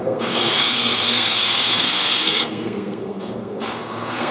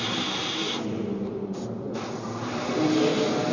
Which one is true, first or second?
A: second